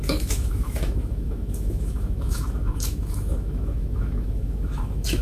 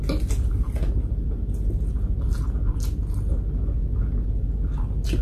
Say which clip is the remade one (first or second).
first